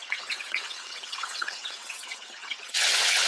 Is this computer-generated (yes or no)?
yes